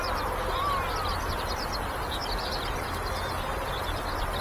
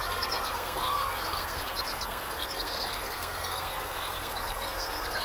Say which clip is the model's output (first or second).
second